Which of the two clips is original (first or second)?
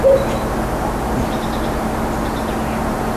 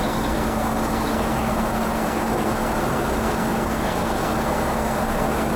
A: first